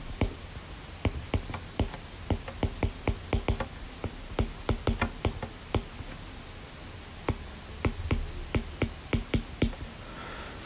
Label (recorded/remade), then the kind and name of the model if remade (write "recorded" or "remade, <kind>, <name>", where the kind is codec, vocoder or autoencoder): recorded